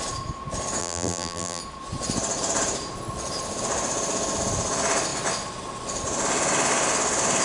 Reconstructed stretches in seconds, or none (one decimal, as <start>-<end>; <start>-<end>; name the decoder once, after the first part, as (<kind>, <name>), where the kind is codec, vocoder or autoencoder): 0.8-1.6 (vocoder, BigVGAN v2)

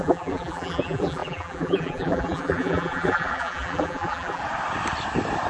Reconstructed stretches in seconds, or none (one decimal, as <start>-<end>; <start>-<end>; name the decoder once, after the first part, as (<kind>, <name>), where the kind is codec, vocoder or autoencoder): 0.0-4.4 (vocoder, BigVGAN v2)

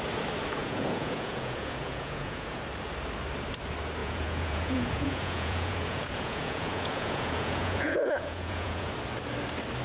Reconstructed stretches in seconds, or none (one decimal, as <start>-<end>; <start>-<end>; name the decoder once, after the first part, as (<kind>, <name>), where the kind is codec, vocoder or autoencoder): 0.6-2.6 (vocoder, Vocos); 4.0-8.9

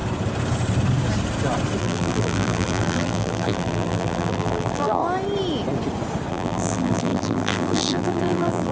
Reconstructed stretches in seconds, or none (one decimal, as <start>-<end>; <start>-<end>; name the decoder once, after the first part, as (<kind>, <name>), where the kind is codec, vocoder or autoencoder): 1.8-5.0 (vocoder, BigVGAN v2); 6.3-8.7

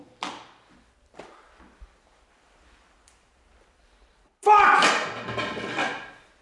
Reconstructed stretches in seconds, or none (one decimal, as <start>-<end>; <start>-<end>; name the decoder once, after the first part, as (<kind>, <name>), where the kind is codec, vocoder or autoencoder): 0.0-5.0 (vocoder, BigVGAN v2)

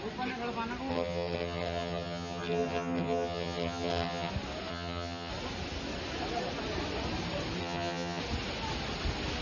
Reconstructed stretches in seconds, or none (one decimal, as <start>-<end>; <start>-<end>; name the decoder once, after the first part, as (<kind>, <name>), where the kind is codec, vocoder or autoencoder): 0.9-4.3 (vocoder, HiFi-GAN); 4.7-5.3; 7.6-8.2